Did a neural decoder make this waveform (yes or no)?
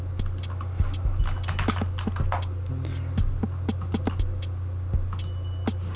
no